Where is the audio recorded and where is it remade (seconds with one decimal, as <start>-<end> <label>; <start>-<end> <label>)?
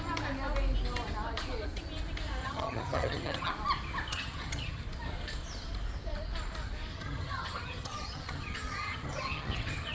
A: 0.0-2.4 recorded; 2.4-3.5 remade; 3.5-4.1 recorded; 4.1-4.8 remade; 4.8-6.9 recorded; 6.9-9.9 remade